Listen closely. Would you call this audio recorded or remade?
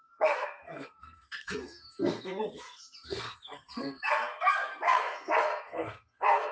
remade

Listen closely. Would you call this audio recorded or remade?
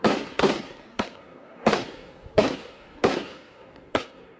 remade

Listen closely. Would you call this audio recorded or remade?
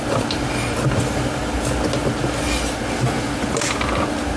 recorded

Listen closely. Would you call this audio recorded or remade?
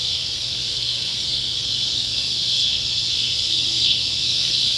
remade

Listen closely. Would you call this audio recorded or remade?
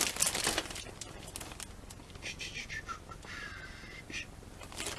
recorded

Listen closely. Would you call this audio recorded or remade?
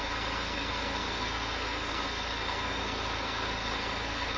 remade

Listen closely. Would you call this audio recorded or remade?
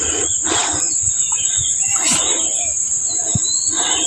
recorded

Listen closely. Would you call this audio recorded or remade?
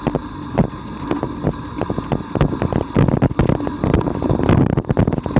recorded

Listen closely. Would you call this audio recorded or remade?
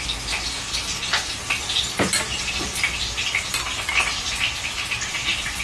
recorded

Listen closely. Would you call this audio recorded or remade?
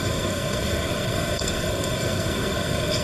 remade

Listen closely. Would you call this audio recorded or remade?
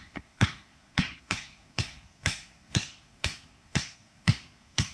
remade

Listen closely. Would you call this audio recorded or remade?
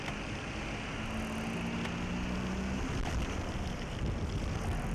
recorded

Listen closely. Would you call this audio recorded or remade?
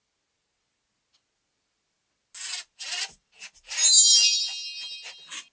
recorded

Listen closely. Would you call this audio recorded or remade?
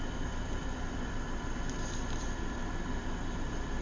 recorded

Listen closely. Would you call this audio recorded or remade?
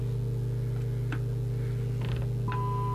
recorded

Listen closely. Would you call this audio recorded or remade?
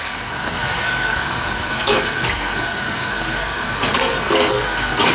remade